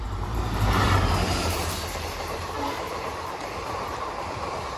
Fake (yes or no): yes